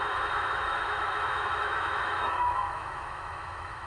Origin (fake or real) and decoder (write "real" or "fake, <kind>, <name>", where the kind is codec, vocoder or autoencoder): fake, autoencoder, DAC-VAE